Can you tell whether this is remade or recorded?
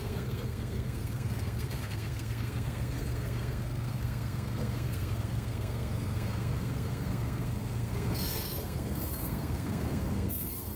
remade